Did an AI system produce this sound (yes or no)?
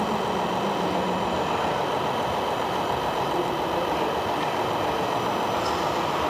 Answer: no